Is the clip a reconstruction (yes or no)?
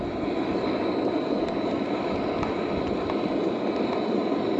no